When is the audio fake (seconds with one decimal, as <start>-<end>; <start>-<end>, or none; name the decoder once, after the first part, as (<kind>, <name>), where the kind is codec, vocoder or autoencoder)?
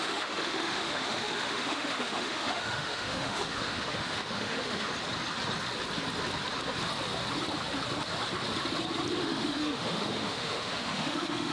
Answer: 0.0-4.9 (autoencoder, DAC-VAE); 9.2-11.5